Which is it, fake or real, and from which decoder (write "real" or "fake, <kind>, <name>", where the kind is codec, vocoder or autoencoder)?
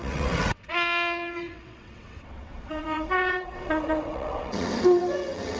fake, vocoder, WaveNeXt